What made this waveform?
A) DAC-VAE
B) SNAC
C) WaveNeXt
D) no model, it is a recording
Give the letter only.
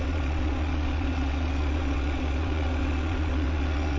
C